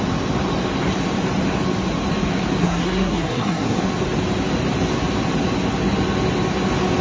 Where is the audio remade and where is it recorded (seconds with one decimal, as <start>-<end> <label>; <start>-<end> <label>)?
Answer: 0.0-2.6 recorded; 2.6-3.9 remade; 3.9-7.0 recorded